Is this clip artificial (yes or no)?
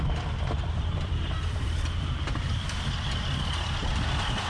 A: yes